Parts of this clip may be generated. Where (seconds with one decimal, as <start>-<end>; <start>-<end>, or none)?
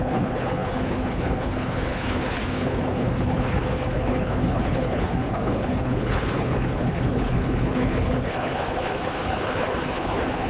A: 0.0-10.5